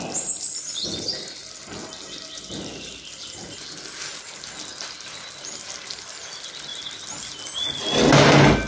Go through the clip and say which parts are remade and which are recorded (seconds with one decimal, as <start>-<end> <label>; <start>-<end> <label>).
0.0-8.7 recorded